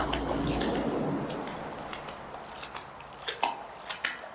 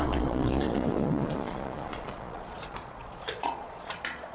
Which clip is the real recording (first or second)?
first